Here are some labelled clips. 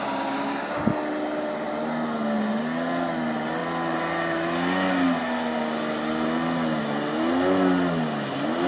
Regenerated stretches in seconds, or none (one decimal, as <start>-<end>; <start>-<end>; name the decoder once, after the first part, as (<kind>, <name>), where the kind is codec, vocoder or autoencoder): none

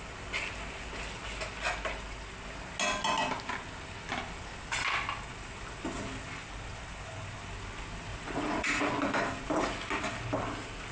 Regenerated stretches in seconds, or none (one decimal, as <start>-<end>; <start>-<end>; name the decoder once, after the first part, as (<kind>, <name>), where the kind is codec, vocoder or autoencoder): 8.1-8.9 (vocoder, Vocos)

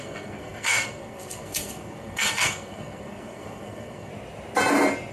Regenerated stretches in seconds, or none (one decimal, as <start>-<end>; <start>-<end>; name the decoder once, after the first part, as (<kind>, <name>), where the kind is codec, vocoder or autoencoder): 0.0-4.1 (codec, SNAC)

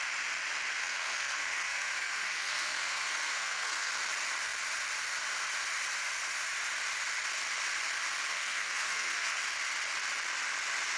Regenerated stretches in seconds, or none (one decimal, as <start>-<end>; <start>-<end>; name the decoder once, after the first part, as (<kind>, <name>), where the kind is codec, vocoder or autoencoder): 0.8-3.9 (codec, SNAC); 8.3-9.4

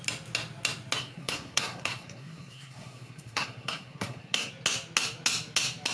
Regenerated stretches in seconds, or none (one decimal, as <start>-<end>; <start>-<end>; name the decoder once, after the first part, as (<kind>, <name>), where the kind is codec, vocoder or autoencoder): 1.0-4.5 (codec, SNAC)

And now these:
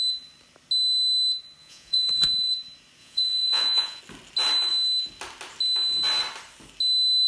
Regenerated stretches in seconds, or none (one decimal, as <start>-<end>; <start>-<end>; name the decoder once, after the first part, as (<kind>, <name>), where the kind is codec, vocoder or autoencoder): 1.6-2.5 (vocoder, Vocos); 3.0-4.0